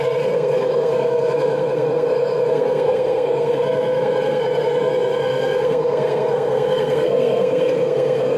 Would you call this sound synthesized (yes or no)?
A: yes